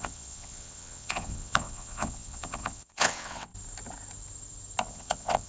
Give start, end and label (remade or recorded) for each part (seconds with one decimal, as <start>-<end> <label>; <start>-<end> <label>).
0.0-3.5 remade; 3.5-4.9 recorded; 4.9-5.5 remade